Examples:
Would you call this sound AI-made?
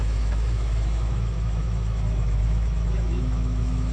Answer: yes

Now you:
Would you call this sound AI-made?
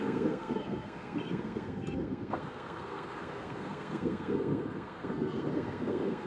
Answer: yes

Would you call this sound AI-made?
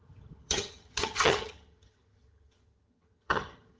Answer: yes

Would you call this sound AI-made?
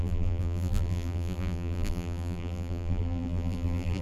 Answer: yes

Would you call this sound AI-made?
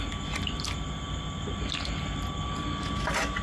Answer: no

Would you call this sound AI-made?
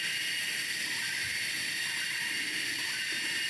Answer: no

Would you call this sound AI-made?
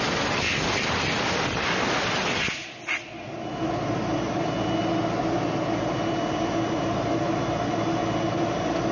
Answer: no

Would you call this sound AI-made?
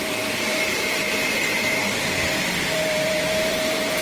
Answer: yes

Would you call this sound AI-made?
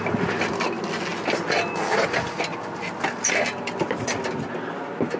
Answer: no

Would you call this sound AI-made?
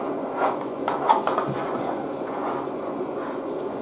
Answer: yes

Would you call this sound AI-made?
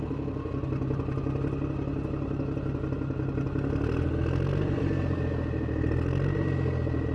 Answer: no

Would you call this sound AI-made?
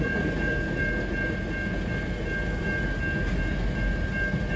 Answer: no